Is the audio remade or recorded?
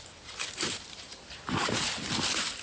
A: remade